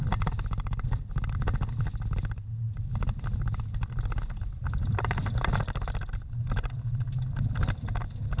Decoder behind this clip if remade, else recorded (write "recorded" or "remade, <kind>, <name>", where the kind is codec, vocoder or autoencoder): recorded